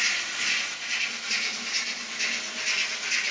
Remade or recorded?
recorded